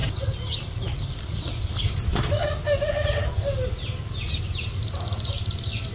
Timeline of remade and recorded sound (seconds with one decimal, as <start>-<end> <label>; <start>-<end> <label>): 0.0-5.9 recorded